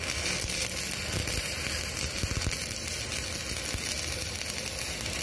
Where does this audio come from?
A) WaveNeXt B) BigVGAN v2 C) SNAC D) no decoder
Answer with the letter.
D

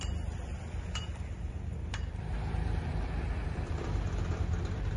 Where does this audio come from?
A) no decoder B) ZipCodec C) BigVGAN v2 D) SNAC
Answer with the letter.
C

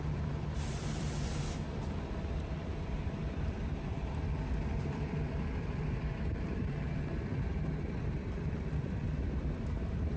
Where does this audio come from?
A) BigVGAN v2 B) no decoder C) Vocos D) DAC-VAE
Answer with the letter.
A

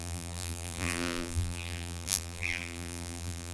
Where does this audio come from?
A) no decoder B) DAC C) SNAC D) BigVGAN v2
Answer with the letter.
D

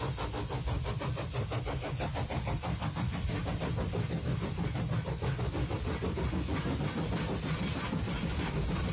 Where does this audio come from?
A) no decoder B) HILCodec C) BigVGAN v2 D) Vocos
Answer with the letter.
A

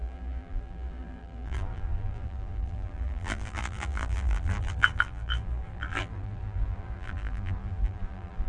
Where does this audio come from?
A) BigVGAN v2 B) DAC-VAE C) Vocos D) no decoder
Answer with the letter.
A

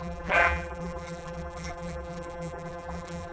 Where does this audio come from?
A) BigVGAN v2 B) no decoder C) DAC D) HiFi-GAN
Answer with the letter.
A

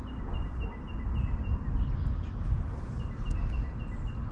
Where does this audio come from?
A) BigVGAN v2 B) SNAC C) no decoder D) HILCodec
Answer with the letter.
C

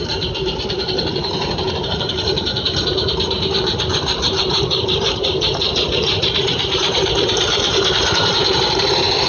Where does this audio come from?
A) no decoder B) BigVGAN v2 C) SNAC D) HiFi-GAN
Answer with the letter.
B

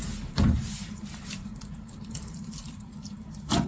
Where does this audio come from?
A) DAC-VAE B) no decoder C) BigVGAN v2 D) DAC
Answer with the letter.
C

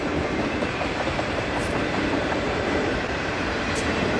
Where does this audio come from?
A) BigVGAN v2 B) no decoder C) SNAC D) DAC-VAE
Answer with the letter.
A